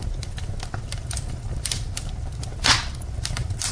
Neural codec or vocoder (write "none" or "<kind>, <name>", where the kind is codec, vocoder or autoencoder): none